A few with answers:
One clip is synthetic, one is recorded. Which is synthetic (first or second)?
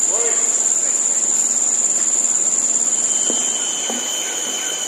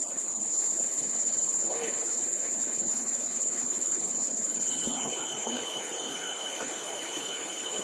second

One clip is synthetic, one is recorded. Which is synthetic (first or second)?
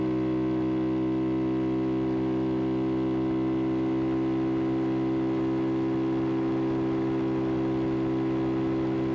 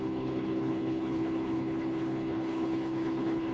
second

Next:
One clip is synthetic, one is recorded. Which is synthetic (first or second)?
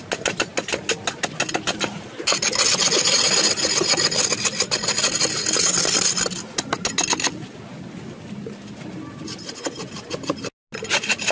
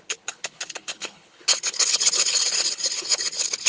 second